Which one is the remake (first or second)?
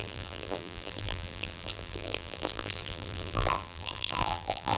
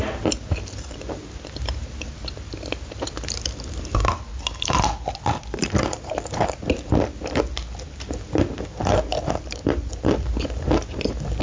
first